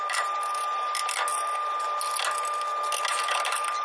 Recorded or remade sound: recorded